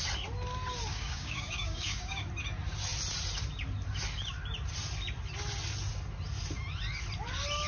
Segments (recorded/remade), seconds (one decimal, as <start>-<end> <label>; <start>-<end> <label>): 0.0-0.9 recorded; 0.9-2.3 remade; 2.3-7.7 recorded